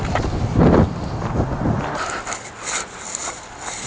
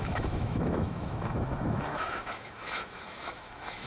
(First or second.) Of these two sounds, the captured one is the first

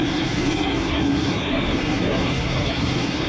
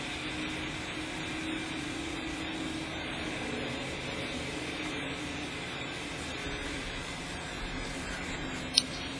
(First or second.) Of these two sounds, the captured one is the second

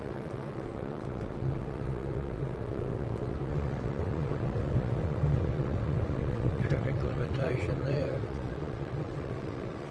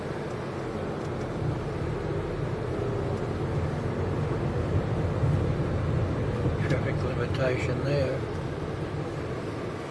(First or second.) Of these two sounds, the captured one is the second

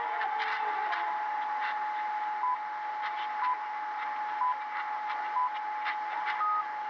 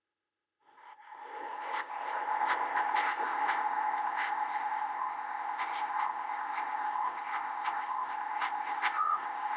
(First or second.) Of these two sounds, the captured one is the first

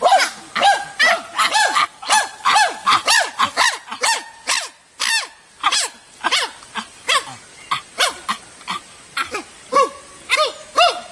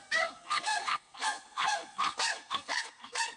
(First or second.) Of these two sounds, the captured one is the first